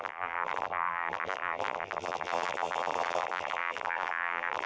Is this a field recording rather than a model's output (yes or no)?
no